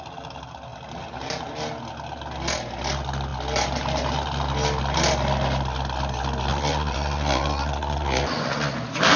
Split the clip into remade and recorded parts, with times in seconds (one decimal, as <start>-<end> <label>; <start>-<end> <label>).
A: 0.0-6.5 recorded; 6.5-8.7 remade; 8.7-9.2 recorded